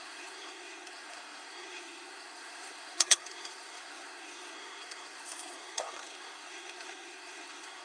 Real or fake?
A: fake